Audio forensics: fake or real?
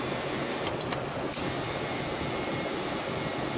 real